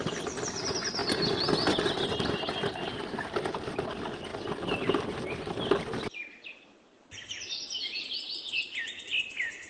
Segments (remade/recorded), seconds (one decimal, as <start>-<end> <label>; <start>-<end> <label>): 0.0-9.7 recorded